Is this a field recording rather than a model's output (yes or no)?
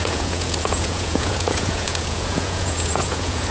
no